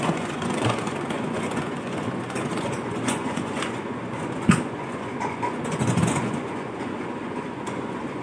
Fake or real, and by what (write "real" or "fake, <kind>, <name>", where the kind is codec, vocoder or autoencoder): fake, vocoder, Vocos